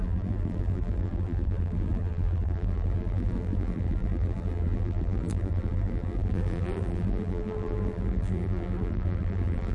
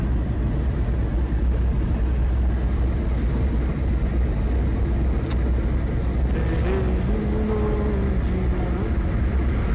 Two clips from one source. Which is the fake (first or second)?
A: first